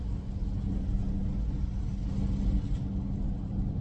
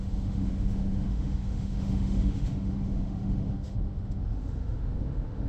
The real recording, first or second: first